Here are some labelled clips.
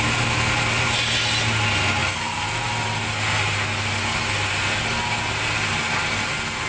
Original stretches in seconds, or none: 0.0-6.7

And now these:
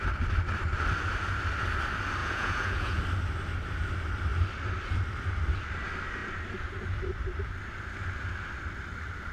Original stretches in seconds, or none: 0.0-2.2; 3.0-9.3

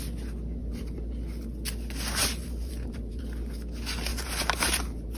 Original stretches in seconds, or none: 0.0-0.6; 1.1-2.2; 3.2-4.1

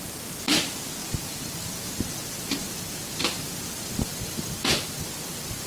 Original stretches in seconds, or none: 0.0-1.0; 4.4-5.7